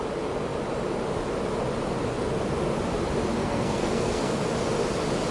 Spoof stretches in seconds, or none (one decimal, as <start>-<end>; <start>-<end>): 3.4-4.4